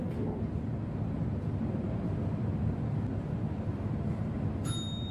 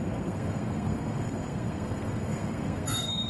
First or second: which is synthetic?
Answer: second